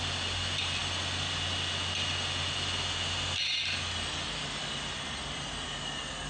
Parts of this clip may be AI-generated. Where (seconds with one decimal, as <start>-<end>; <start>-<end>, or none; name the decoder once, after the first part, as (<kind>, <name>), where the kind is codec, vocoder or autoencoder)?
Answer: none